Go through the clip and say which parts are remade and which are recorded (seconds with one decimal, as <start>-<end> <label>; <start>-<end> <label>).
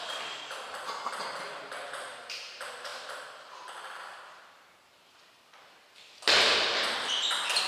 0.0-7.7 recorded